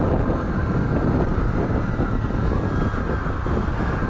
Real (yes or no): yes